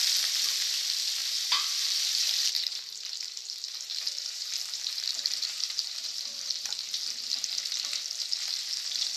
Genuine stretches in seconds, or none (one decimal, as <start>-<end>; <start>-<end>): 0.0-1.2; 2.8-3.9; 6.8-9.2